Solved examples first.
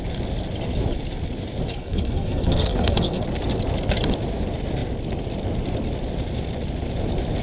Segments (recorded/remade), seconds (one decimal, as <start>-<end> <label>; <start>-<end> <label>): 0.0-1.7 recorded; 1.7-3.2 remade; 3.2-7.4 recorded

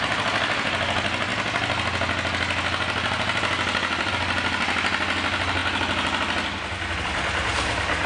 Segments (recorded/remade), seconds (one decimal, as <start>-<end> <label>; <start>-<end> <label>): 0.0-8.1 recorded

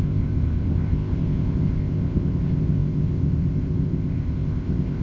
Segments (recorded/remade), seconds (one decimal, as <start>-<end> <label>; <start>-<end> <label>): 0.0-5.0 remade

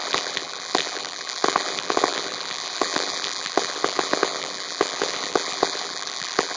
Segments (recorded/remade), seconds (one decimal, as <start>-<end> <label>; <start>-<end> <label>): 0.0-6.6 remade